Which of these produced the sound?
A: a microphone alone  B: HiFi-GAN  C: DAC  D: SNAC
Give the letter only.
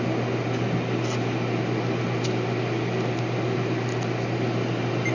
A